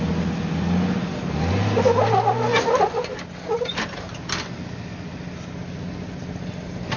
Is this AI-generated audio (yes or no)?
no